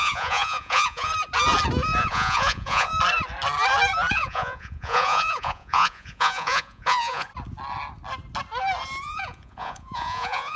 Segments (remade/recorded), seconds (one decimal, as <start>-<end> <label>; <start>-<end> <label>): 0.0-1.1 remade; 1.1-2.0 recorded; 2.0-2.9 remade; 2.9-4.1 recorded; 4.1-7.3 remade; 7.3-9.0 recorded; 9.0-10.6 remade